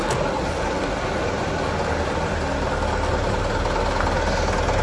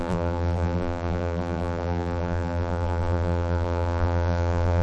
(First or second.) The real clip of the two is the first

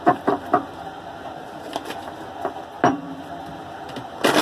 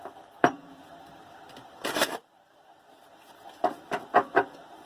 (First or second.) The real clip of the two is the first